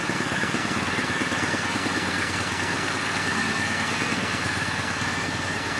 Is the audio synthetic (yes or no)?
yes